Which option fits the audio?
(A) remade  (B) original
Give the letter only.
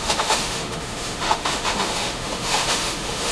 A